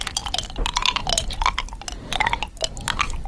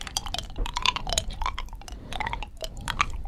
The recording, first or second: first